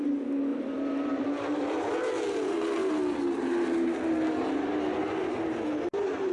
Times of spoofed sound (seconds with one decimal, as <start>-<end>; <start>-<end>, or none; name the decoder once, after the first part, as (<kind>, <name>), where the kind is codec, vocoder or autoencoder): 0.5-1.9 (vocoder, BigVGAN v2)